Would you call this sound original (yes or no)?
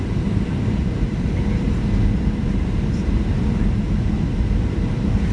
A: no